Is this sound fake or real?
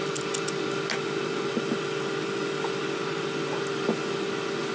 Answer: real